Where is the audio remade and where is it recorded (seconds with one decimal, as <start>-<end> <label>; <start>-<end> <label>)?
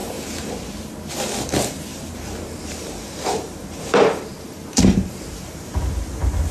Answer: 0.0-0.5 remade; 0.5-1.9 recorded; 1.9-5.8 remade; 5.8-6.5 recorded